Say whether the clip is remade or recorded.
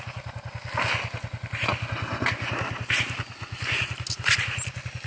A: recorded